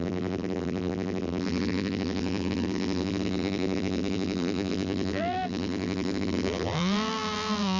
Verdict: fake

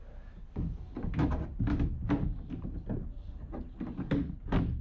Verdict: real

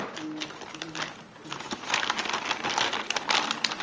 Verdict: real